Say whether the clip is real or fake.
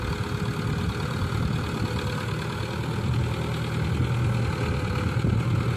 real